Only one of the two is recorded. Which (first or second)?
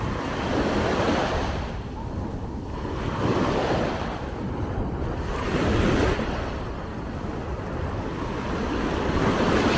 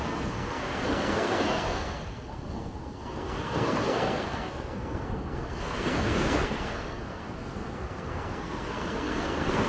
first